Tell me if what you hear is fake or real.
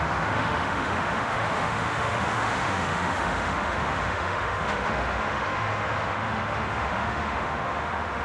fake